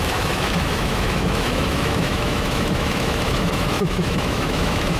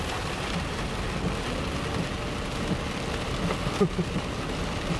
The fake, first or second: first